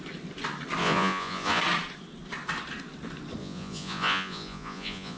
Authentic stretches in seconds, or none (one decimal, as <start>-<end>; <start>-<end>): 0.0-0.8; 1.6-3.4